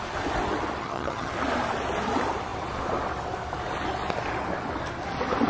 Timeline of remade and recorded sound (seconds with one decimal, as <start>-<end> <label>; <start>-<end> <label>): 0.0-0.8 recorded; 0.8-1.3 remade; 1.3-5.5 recorded